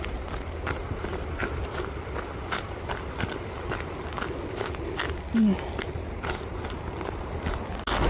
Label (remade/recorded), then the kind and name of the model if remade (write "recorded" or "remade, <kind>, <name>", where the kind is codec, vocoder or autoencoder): recorded